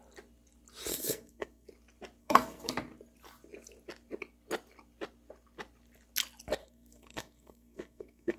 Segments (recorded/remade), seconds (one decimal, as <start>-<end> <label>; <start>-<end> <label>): 0.0-0.9 recorded; 0.9-1.7 remade; 1.7-2.2 recorded; 2.2-2.7 remade; 2.7-6.6 recorded; 6.6-8.4 remade